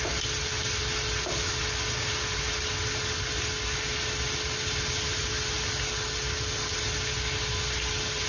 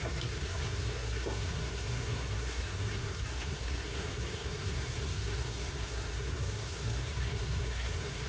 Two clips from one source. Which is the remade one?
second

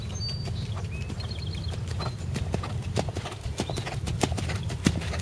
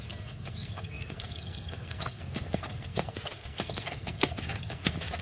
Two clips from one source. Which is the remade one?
second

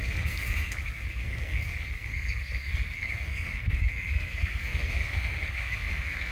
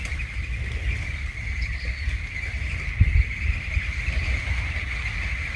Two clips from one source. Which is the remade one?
first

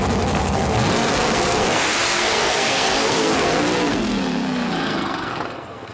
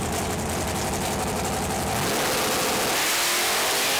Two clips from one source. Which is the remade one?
first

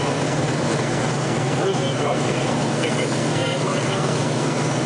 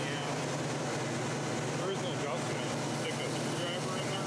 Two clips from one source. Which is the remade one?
first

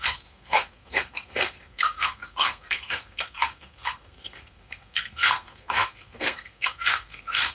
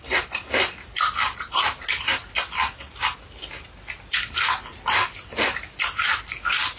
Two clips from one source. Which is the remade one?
first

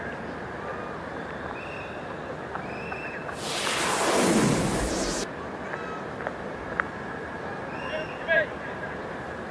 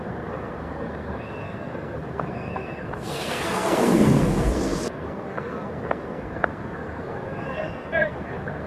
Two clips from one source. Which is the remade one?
second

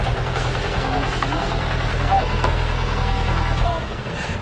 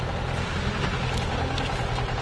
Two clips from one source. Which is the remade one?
first